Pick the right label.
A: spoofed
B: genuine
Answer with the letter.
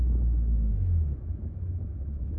A